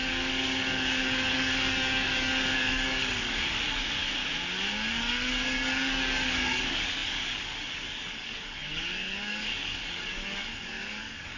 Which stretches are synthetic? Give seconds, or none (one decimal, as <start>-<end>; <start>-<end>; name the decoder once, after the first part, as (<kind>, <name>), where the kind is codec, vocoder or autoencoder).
0.0-4.2 (codec, DAC); 4.9-11.4